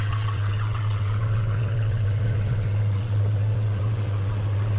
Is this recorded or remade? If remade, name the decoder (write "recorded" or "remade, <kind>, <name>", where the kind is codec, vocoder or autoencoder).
remade, vocoder, WaveNeXt